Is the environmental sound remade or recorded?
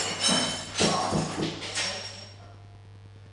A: recorded